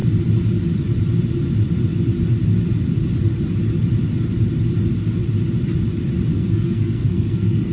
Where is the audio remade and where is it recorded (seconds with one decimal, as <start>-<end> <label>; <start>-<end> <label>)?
0.0-6.3 recorded; 6.3-7.7 remade